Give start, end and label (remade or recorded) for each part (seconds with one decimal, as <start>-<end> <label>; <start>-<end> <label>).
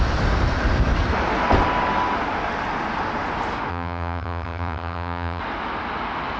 0.0-3.7 recorded; 3.7-5.4 remade; 5.4-6.4 recorded